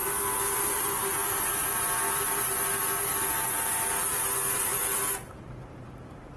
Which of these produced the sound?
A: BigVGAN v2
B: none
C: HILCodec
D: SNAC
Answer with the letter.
A